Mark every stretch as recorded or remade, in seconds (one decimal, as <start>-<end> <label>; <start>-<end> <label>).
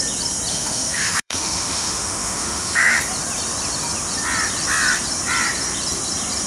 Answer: 0.0-0.5 recorded; 0.5-3.0 remade; 3.0-6.5 recorded